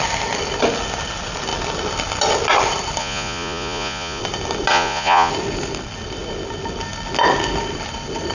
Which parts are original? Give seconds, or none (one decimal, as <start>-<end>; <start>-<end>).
0.0-3.0; 4.2-4.7; 5.3-8.3

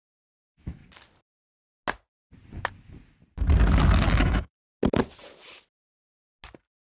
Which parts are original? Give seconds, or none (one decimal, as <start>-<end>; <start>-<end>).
0.8-4.2; 4.7-6.8

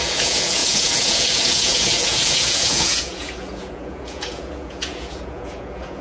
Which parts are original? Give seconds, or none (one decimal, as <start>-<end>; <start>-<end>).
none

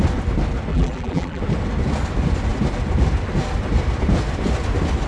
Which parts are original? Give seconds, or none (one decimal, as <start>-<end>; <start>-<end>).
0.0-0.7; 1.4-5.1

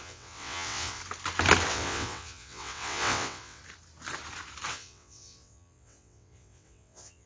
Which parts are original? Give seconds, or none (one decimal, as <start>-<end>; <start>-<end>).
1.0-1.7; 3.6-4.7

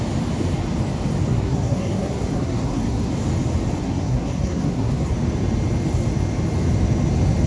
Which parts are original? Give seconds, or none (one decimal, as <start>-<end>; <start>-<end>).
0.0-1.3; 3.1-3.8; 5.1-7.5

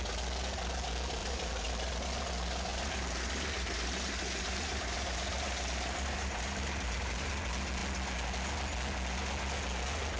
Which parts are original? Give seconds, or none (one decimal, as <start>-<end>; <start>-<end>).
0.0-1.2; 1.9-2.7; 7.3-10.2

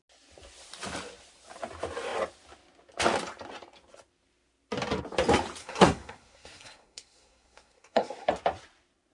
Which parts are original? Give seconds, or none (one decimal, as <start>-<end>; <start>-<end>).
0.0-5.6; 8.3-9.1